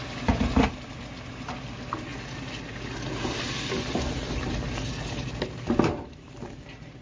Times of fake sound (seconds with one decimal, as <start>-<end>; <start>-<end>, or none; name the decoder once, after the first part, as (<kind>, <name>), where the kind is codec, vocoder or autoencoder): none